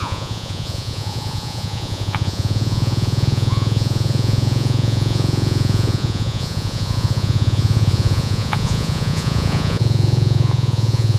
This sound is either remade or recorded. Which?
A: remade